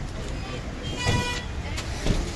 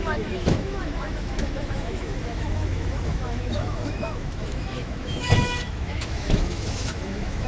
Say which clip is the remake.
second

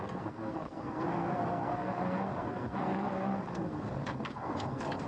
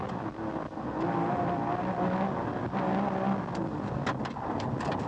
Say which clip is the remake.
first